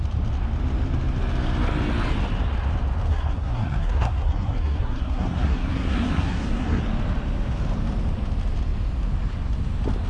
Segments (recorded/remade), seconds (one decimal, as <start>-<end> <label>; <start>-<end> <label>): 0.0-3.1 recorded; 3.1-6.8 remade; 6.8-10.1 recorded